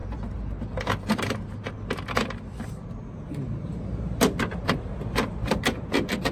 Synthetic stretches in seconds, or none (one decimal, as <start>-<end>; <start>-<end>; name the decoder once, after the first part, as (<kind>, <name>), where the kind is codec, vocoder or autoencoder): 0.0-3.8 (vocoder, BigVGAN v2)